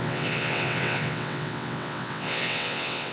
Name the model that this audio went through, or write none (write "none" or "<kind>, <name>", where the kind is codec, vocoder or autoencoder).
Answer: vocoder, WaveNeXt